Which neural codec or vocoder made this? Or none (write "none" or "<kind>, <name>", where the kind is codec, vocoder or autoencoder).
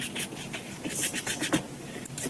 none